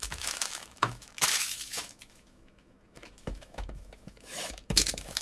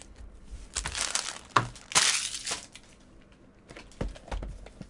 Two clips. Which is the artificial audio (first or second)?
first